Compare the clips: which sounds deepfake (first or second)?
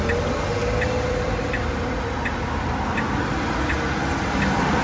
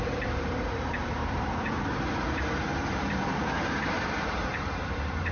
second